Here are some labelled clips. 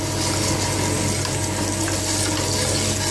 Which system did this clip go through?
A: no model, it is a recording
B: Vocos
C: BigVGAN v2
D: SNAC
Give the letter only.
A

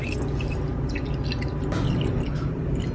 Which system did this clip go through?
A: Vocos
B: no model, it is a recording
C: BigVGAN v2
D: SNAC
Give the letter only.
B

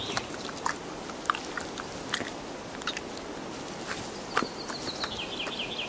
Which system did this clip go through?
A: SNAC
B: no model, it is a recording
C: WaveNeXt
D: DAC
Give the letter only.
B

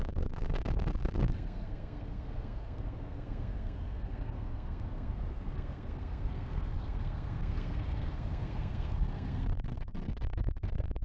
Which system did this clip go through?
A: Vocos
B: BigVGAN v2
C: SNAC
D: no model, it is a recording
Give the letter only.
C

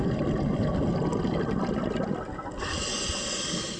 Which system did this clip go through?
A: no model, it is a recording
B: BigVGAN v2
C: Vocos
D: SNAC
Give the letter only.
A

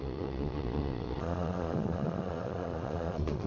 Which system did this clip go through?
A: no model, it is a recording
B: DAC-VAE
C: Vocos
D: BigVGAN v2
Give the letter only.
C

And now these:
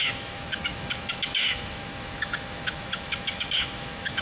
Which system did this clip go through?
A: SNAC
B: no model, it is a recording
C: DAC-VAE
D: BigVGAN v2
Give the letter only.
C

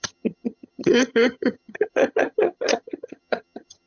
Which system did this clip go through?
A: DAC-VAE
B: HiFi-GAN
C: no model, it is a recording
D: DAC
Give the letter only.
B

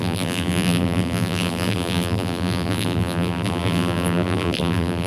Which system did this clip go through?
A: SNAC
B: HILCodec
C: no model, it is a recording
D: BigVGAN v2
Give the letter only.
D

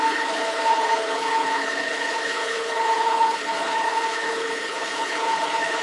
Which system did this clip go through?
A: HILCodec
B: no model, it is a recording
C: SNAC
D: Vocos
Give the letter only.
A